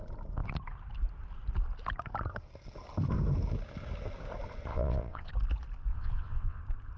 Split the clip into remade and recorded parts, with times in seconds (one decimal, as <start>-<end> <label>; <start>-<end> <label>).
0.0-4.7 recorded; 4.7-5.3 remade; 5.3-5.9 recorded; 5.9-6.6 remade; 6.6-7.0 recorded